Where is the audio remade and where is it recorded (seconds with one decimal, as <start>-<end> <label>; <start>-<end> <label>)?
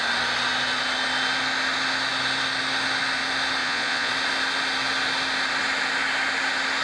0.0-3.6 recorded; 3.6-4.1 remade; 4.1-6.8 recorded